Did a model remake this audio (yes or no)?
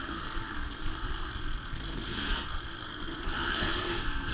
yes